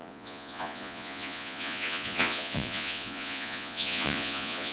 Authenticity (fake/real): fake